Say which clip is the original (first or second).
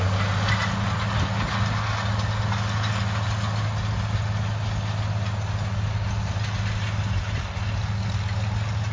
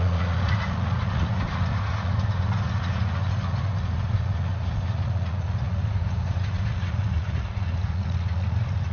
first